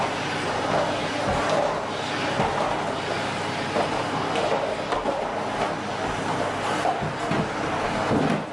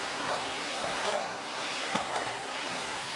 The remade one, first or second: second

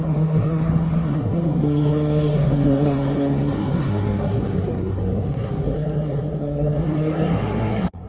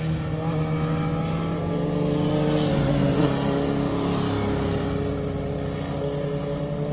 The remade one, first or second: first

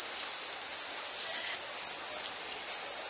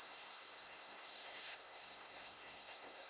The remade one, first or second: second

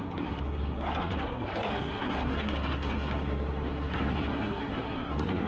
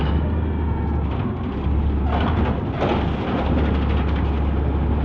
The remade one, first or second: first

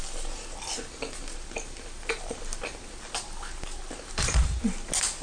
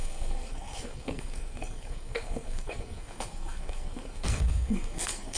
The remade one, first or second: second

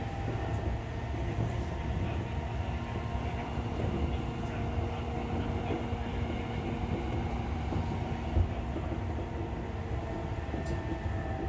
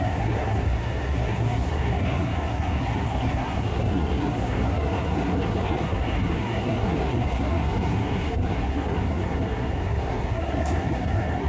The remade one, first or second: second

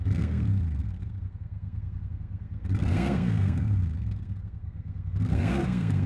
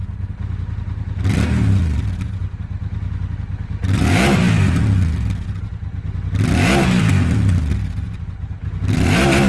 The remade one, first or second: first